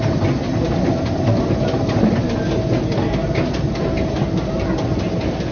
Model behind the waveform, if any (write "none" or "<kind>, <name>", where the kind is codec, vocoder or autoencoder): none